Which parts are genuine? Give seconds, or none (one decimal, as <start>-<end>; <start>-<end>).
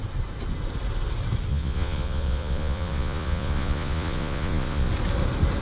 0.0-1.5; 4.9-5.6